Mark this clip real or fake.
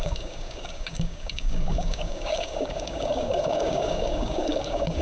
fake